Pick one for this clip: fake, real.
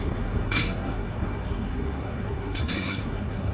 fake